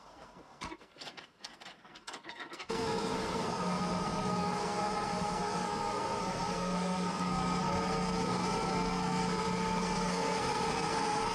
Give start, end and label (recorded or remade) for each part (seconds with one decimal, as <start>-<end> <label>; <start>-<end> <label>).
0.0-11.3 remade